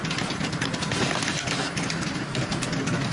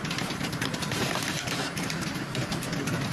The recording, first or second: first